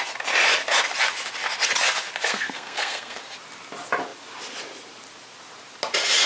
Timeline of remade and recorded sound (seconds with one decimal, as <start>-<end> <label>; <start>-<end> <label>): 0.0-2.3 recorded; 2.3-3.2 remade; 3.2-6.3 recorded